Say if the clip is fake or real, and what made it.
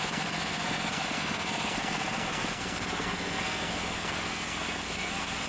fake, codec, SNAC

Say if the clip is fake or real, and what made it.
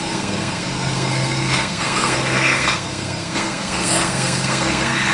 fake, codec, SNAC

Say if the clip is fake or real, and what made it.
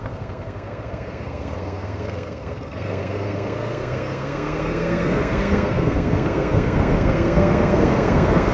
fake, codec, SNAC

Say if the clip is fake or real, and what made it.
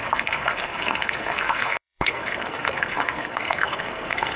fake, codec, SNAC